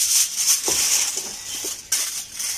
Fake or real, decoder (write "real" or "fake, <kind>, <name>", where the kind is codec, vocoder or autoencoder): real